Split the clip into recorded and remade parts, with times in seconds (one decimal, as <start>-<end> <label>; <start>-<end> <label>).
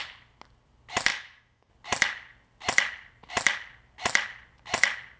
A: 0.0-1.1 recorded; 1.1-1.7 remade; 1.7-5.2 recorded